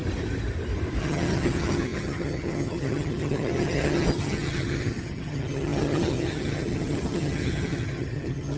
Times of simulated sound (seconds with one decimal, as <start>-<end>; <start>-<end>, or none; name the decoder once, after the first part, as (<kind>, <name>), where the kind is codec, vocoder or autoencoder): 1.0-8.6 (vocoder, HiFi-GAN)